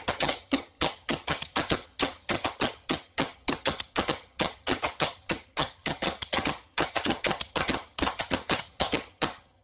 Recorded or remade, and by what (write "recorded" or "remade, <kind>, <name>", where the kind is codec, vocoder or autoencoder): remade, vocoder, HiFi-GAN